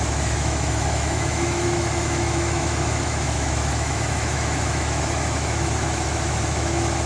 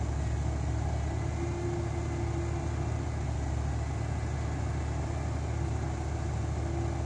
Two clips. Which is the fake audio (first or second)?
first